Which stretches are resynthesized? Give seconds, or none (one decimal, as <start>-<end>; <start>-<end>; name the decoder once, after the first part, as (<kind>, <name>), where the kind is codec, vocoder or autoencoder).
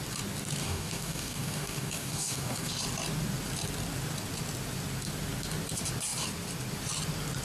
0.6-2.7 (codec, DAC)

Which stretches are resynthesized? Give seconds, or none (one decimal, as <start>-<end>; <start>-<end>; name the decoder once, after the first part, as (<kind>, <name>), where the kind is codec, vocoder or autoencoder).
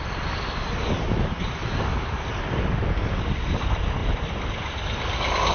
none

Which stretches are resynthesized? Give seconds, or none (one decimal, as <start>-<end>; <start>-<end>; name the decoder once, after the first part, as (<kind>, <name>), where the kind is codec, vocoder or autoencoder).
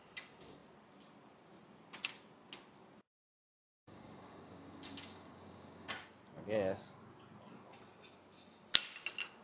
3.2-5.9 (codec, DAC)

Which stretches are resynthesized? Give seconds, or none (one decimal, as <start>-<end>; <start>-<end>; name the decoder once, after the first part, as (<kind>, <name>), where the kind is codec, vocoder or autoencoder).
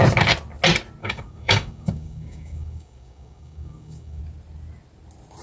1.0-4.2 (codec, DAC)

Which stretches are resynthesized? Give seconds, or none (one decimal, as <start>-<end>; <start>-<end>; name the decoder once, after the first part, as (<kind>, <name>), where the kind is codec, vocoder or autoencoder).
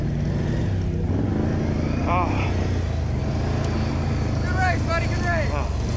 none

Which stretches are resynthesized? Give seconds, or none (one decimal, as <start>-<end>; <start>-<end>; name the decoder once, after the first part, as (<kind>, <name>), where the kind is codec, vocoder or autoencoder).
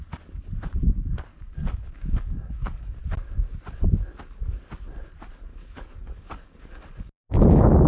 1.3-3.0 (codec, DAC); 5.5-7.2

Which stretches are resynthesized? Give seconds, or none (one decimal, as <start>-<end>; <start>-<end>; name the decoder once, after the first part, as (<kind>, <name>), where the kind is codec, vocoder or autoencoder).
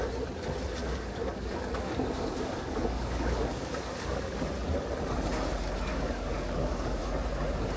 0.8-4.4 (codec, DAC); 5.9-7.0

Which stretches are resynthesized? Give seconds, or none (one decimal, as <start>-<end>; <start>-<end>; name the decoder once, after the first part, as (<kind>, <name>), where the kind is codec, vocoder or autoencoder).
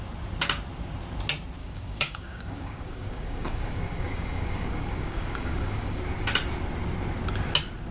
1.6-6.0 (codec, DAC)